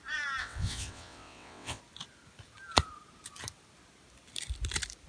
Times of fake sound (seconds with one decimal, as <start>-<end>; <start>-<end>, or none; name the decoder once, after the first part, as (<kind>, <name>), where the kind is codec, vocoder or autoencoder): 0.4-1.8 (vocoder, WaveNeXt)